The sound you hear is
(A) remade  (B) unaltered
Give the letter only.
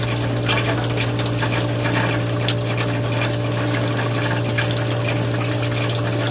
B